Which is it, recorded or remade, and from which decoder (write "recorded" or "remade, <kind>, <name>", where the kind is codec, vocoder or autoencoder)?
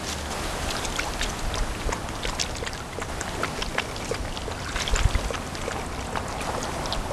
recorded